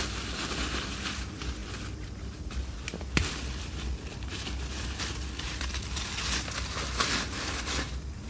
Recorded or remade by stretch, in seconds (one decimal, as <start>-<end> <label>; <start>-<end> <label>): 0.0-8.3 recorded